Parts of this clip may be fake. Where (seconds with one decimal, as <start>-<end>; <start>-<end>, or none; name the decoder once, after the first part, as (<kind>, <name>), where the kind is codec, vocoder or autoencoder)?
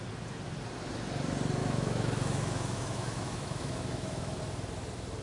1.6-4.4 (autoencoder, DAC-VAE)